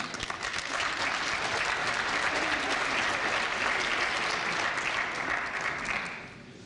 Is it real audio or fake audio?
real